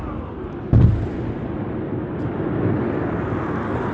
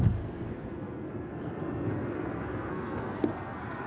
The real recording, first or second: first